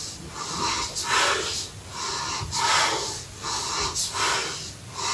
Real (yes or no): yes